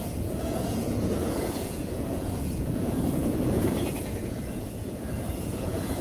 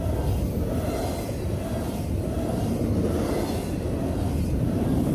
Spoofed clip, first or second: first